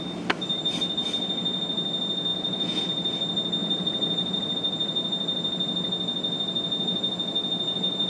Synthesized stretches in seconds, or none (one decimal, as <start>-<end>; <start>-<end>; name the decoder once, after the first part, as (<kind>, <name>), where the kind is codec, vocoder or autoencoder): 2.3-2.8 (vocoder, Vocos); 3.6-4.5